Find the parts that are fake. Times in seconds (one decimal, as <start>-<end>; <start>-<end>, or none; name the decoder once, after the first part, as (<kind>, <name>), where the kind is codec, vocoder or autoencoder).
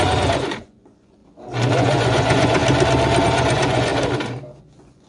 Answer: 0.0-1.2 (vocoder, Vocos); 1.7-2.6; 3.2-3.9; 4.6-5.1